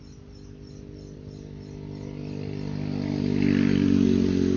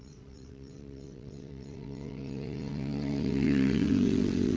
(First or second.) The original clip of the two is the first